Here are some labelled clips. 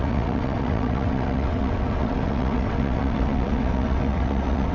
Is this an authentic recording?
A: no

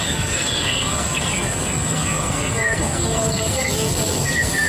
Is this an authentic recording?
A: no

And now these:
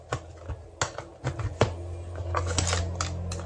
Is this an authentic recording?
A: yes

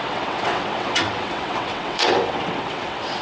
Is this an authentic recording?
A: no